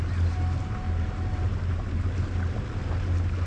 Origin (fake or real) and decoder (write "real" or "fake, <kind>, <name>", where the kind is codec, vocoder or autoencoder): real